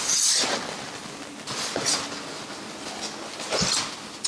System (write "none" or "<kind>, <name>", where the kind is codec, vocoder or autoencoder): none